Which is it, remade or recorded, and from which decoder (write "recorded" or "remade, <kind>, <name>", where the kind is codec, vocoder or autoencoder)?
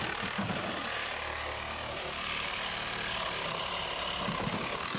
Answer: recorded